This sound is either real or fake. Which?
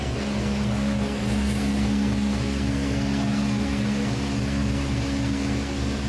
fake